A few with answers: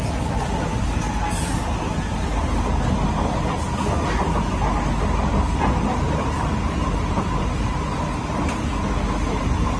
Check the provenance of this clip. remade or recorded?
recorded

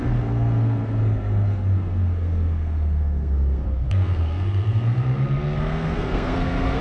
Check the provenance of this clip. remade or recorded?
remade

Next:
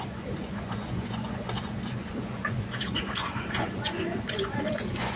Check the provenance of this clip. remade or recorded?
remade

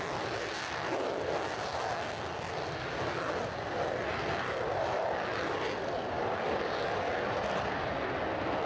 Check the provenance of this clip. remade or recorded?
recorded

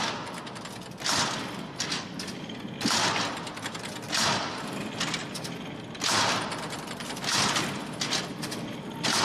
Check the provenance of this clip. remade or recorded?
recorded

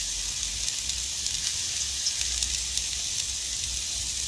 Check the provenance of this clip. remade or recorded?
recorded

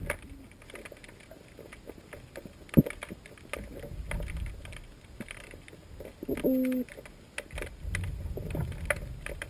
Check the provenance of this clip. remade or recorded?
recorded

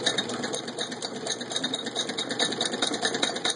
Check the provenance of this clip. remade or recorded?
remade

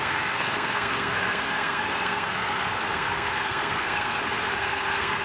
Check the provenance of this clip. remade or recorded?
remade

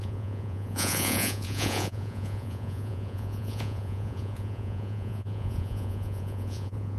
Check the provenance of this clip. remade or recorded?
remade